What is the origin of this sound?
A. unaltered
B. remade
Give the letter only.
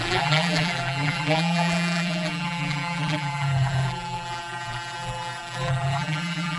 B